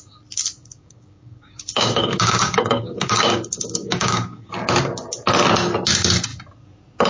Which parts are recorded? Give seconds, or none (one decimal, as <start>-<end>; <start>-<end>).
0.0-0.6; 4.5-7.1